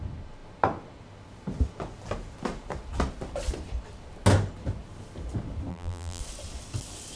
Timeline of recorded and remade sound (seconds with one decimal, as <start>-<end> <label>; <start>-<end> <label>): 0.0-5.7 recorded; 5.7-6.2 remade; 6.2-7.2 recorded